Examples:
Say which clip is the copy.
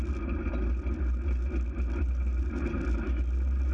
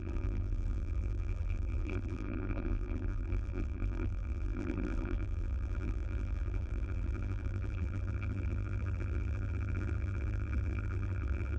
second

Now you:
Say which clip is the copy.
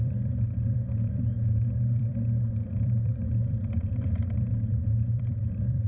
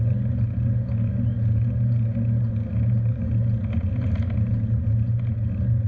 first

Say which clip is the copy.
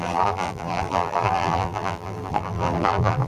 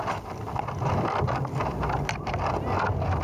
first